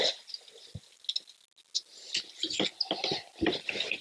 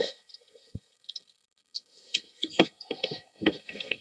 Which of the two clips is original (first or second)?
first